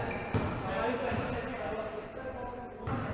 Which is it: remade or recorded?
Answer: recorded